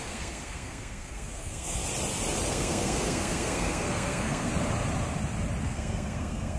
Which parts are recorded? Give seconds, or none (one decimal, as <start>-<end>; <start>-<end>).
1.8-2.5; 4.5-5.6